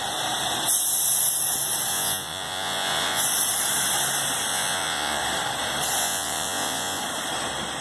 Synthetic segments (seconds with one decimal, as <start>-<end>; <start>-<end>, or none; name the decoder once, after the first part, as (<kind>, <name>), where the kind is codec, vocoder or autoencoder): 1.9-3.2 (vocoder, Vocos); 4.5-5.2; 6.0-7.0